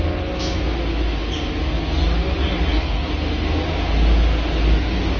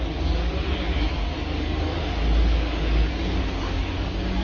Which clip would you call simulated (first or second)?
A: second